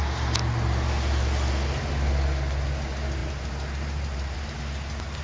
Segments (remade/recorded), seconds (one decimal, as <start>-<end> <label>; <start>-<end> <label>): 0.0-3.2 recorded; 3.2-4.6 remade; 4.6-5.2 recorded